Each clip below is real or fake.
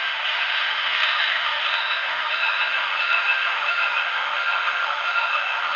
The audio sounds fake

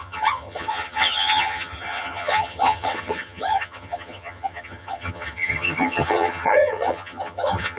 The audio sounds fake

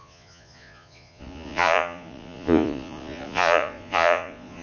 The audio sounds fake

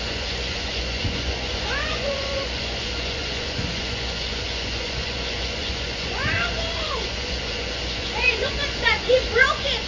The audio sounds fake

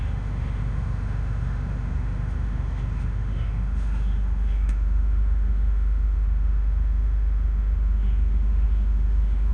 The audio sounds fake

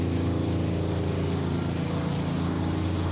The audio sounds real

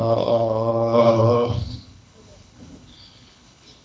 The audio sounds fake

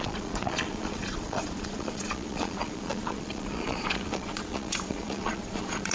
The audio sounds fake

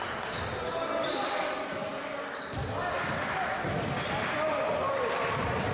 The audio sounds real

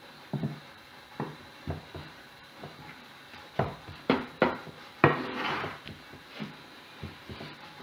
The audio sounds fake